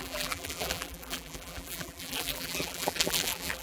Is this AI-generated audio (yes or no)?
yes